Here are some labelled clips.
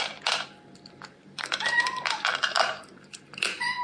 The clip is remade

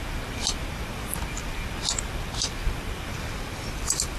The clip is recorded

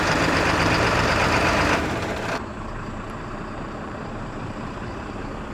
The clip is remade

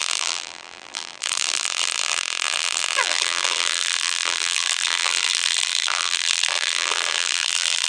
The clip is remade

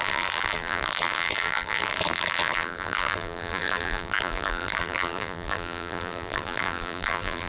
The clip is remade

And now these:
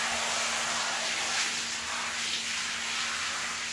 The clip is remade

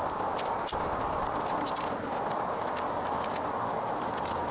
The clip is recorded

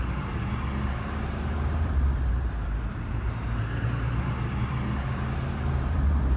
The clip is remade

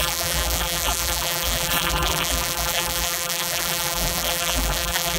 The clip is remade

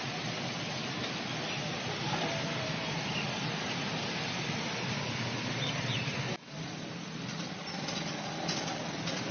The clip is remade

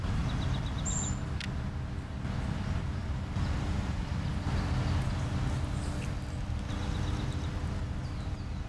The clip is recorded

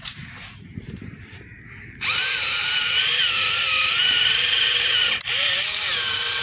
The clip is remade